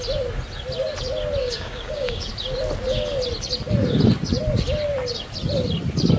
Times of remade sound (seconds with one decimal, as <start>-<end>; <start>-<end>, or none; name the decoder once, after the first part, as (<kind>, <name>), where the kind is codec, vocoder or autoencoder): 1.4-2.3 (codec, DAC)